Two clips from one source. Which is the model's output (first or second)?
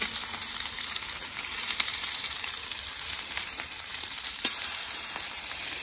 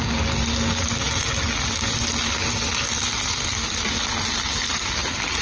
first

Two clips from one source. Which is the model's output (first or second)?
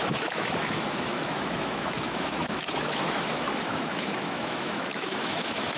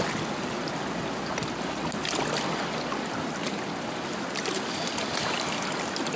first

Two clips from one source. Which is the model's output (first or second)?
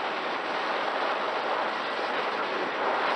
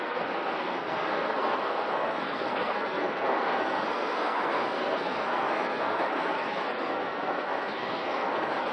second